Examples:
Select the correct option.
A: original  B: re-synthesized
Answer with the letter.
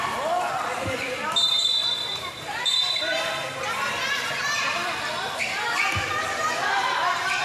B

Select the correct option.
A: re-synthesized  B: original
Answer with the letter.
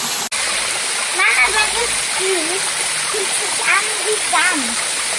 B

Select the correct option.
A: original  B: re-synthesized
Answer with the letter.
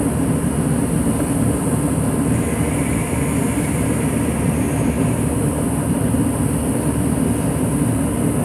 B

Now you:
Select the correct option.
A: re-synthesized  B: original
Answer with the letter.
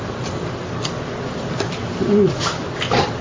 A